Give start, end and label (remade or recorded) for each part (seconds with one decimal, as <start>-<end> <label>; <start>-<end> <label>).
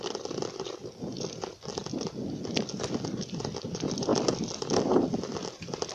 0.0-1.8 recorded; 1.8-2.4 remade; 2.4-4.1 recorded; 4.1-5.5 remade; 5.5-5.9 recorded